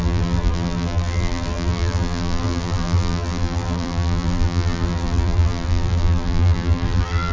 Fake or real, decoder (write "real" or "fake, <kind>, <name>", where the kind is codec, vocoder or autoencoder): fake, vocoder, BigVGAN v2